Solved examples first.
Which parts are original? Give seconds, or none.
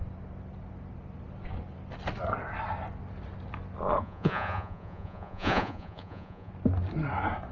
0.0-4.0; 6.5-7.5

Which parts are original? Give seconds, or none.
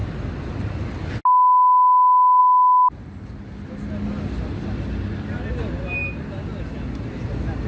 0.0-7.7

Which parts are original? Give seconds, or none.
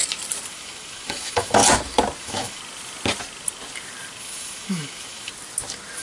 0.0-0.5; 1.6-2.2; 2.6-4.2; 5.3-6.0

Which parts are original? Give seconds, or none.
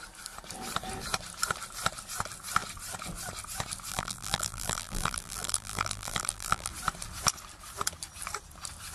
0.0-3.9; 6.7-8.9